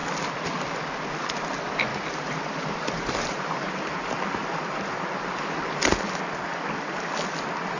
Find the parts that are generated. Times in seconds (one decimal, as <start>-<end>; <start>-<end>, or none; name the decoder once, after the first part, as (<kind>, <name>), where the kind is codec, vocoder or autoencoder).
1.9-3.7 (vocoder, BigVGAN v2)